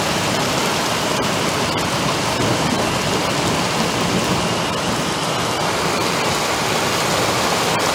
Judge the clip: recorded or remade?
recorded